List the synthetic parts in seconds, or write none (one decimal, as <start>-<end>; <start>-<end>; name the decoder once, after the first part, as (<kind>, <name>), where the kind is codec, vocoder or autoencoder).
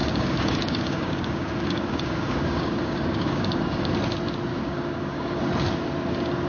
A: 0.0-3.9 (codec, DAC); 4.5-5.4